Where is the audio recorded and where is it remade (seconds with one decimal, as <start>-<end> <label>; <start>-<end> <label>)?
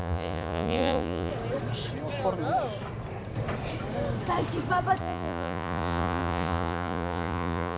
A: 0.0-1.3 remade; 1.3-5.0 recorded; 5.0-7.8 remade